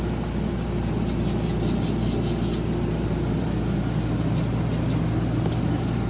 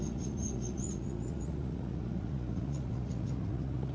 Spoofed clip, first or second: second